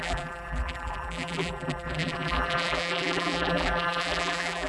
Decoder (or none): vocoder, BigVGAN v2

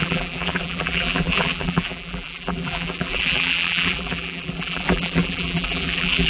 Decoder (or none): vocoder, BigVGAN v2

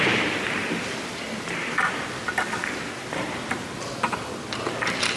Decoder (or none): vocoder, BigVGAN v2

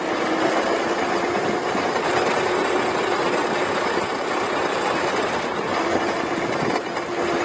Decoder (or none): vocoder, BigVGAN v2